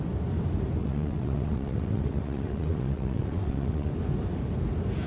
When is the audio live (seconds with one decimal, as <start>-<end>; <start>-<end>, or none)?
0.0-0.8; 3.9-5.1